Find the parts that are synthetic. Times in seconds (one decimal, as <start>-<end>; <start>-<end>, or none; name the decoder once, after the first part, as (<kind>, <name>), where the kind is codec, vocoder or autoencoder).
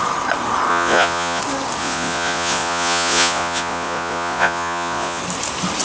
0.7-1.4 (vocoder, Vocos); 1.8-5.2